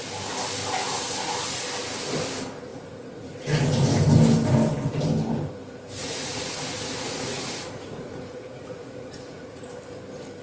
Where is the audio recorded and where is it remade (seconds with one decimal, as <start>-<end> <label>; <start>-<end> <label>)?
0.0-2.7 recorded; 2.7-3.3 remade; 3.3-6.0 recorded; 6.0-9.7 remade; 9.7-10.4 recorded